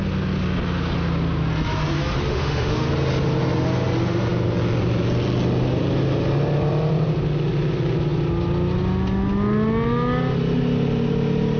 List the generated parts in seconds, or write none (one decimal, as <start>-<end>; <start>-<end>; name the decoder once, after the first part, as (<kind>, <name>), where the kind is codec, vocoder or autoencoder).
2.3-2.9 (autoencoder, DAC-VAE)